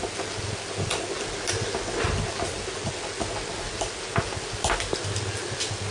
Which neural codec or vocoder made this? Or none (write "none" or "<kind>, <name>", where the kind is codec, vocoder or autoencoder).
none